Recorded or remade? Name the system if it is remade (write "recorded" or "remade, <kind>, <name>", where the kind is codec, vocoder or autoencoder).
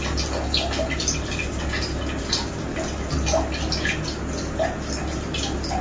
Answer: recorded